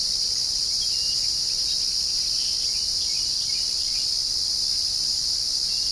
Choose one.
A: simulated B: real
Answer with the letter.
B